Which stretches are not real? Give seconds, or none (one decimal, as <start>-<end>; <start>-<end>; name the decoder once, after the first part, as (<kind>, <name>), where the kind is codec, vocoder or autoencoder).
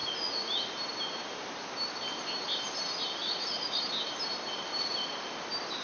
0.0-0.7 (vocoder, Vocos); 3.2-3.8